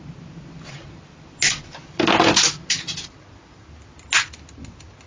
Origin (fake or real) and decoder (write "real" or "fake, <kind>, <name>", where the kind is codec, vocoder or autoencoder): real